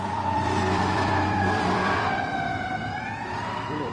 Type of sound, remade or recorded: remade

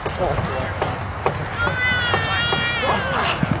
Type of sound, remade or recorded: recorded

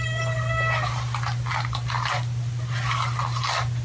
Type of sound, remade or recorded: recorded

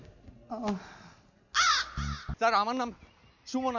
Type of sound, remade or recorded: recorded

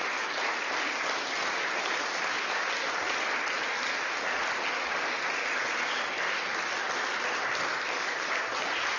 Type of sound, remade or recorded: recorded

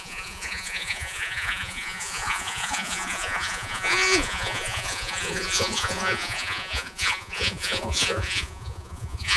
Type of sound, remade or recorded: remade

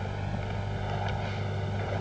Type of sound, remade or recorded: recorded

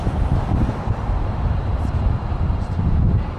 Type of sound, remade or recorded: remade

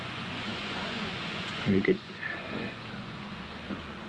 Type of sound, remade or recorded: remade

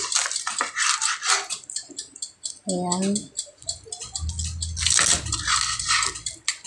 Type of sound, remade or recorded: recorded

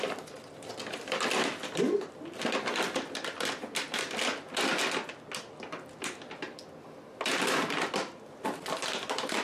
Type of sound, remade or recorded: recorded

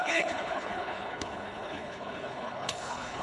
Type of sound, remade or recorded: remade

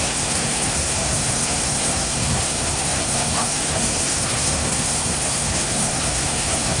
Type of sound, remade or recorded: remade